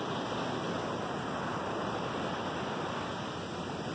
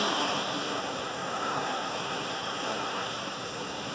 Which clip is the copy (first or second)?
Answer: second